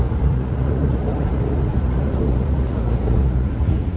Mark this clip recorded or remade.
remade